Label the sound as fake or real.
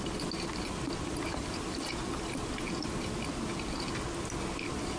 real